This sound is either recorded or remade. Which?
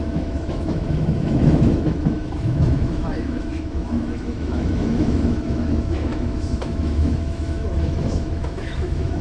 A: remade